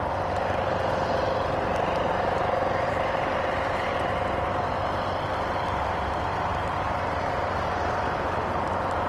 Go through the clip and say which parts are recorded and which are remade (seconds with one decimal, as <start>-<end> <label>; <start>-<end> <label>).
0.0-2.1 recorded; 2.1-4.1 remade; 4.1-6.5 recorded; 6.5-8.7 remade; 8.7-9.1 recorded